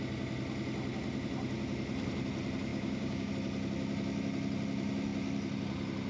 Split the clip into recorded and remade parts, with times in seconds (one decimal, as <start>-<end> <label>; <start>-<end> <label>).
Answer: 0.0-2.7 recorded; 2.7-3.3 remade; 3.3-6.1 recorded